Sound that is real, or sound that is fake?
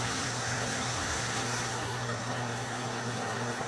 fake